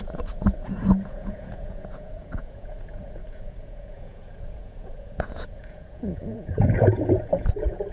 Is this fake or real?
fake